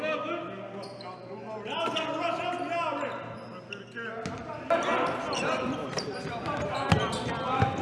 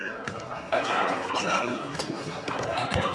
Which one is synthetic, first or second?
second